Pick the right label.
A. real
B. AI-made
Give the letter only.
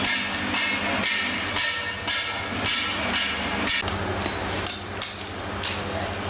A